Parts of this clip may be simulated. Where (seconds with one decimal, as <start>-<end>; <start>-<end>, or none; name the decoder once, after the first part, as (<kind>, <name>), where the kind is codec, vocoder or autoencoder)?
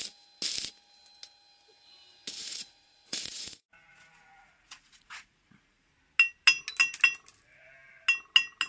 2.4-5.9 (vocoder, Vocos)